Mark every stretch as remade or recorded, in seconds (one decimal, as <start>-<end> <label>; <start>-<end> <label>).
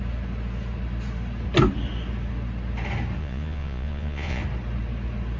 0.0-3.2 recorded; 3.2-4.4 remade; 4.4-5.4 recorded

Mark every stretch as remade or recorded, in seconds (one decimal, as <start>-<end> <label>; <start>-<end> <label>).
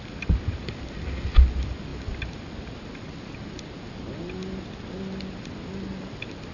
0.0-6.5 recorded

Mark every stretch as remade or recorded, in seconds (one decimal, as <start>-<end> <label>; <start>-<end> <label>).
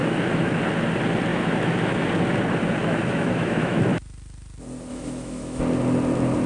0.0-0.6 remade; 0.6-1.3 recorded; 1.3-2.1 remade; 2.1-2.8 recorded; 2.8-3.8 remade; 3.8-4.9 recorded; 4.9-5.6 remade; 5.6-6.5 recorded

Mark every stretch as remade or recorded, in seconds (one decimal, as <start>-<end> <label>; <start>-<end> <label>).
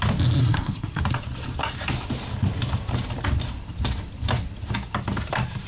0.0-0.4 recorded; 0.4-1.0 remade; 1.0-5.7 recorded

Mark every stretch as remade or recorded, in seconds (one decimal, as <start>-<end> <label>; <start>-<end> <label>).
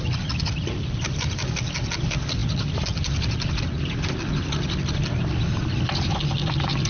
0.0-6.9 recorded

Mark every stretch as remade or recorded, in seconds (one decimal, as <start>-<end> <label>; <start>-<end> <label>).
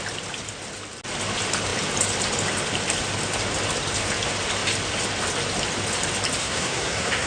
0.0-6.4 recorded; 6.4-7.3 remade